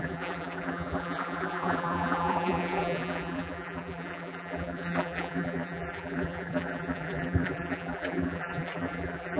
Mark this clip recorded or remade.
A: remade